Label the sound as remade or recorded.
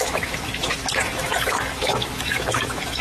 remade